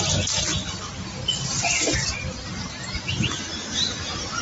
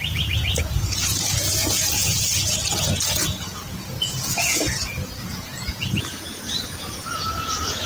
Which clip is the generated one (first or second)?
second